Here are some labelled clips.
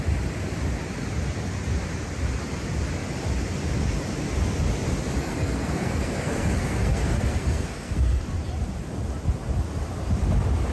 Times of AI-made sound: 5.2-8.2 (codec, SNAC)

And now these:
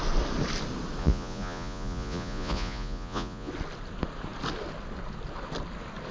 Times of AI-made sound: 1.0-3.5 (vocoder, Vocos)

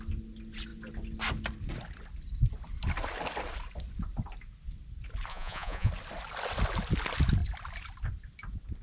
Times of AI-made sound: 5.3-5.9 (vocoder, Vocos)

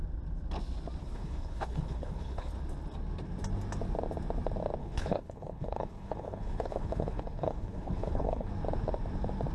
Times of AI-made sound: 1.0-2.5 (codec, HILCodec); 4.8-8.5

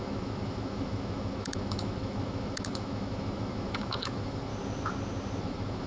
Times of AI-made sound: 0.0-4.5 (autoencoder, DAC-VAE); 5.4-5.9